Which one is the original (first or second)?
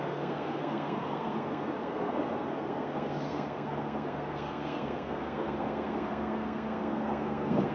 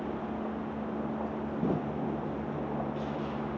second